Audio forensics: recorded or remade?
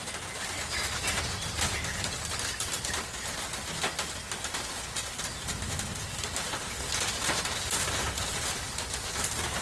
recorded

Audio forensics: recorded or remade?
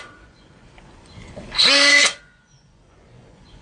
remade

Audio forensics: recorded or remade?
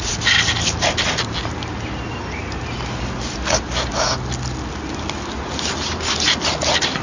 recorded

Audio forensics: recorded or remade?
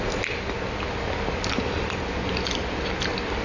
recorded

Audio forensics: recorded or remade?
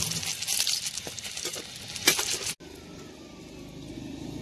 recorded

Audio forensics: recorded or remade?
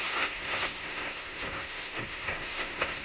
remade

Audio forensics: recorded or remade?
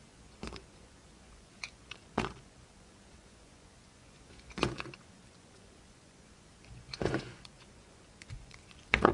remade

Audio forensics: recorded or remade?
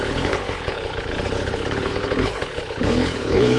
remade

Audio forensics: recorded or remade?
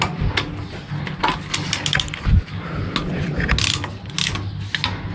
recorded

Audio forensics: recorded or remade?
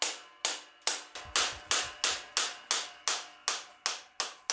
recorded